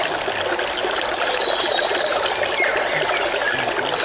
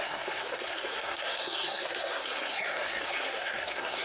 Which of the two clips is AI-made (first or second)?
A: second